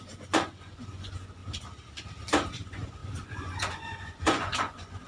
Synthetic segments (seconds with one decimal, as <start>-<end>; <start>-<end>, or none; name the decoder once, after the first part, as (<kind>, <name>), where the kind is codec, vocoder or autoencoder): 0.0-1.4 (vocoder, Vocos); 2.5-5.1